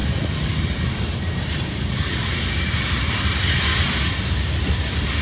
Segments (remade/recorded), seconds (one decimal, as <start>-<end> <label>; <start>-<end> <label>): 0.0-5.2 recorded